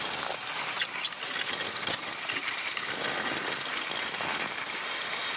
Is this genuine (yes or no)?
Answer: yes